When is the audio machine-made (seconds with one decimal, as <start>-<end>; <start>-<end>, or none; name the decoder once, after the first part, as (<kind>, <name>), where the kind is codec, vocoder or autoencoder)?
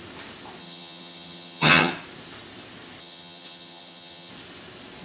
0.6-1.9 (vocoder, HiFi-GAN); 3.0-4.3